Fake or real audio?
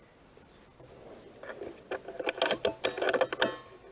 real